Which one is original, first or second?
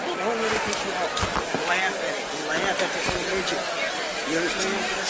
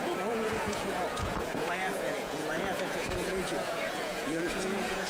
first